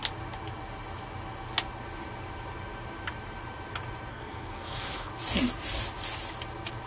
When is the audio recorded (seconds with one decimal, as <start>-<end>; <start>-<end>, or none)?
0.0-4.1; 5.1-6.9